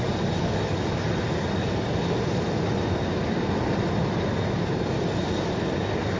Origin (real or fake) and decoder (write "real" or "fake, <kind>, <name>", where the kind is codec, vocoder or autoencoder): real